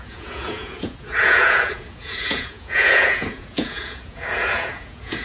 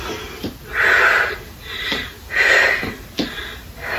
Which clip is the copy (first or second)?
first